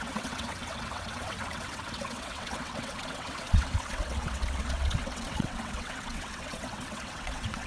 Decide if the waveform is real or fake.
fake